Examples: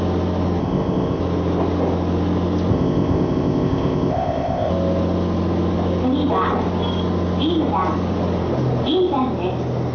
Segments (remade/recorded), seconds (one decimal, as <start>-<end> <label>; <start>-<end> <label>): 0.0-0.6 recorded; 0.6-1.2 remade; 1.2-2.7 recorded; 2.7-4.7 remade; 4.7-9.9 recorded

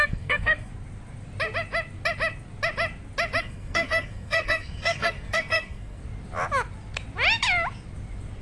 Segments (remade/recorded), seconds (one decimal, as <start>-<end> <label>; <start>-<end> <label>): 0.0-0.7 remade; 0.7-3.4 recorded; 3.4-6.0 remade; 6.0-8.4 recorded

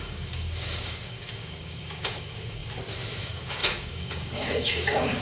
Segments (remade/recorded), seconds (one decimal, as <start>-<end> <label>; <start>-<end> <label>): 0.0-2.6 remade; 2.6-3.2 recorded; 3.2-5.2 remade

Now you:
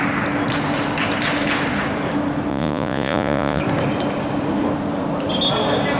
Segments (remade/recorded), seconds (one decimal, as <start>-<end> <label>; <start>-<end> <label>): 0.0-2.5 recorded; 2.5-3.6 remade; 3.6-6.0 recorded

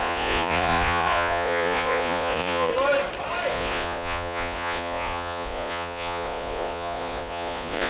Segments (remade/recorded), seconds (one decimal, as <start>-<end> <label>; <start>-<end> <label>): 0.0-2.7 remade; 2.7-3.5 recorded; 3.5-7.9 remade

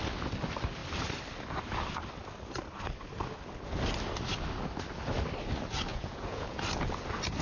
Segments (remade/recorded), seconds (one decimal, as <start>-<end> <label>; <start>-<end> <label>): 0.0-5.9 recorded; 5.9-6.6 remade; 6.6-7.4 recorded